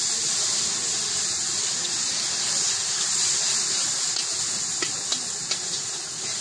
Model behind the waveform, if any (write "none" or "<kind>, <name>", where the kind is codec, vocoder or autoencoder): none